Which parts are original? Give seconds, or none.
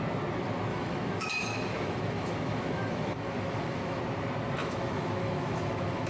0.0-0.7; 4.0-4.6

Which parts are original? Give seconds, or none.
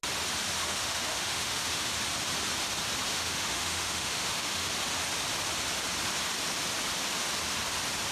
0.0-0.6; 1.9-3.1; 4.7-8.1